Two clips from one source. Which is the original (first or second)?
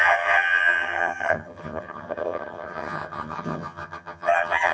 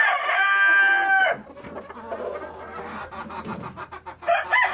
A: second